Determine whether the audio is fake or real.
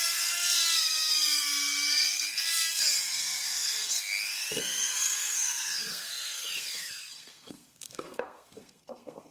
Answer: fake